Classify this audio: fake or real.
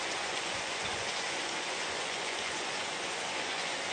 fake